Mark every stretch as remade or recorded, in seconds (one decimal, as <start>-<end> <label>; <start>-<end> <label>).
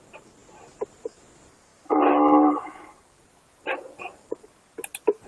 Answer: 0.0-5.3 recorded